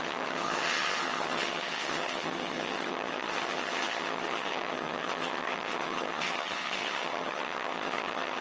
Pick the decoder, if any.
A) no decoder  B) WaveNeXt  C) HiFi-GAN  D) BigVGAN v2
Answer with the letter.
C